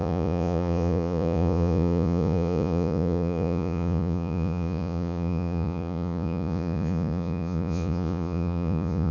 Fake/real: fake